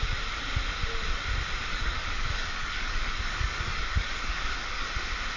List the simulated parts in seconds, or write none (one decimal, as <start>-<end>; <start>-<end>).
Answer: 1.7-4.9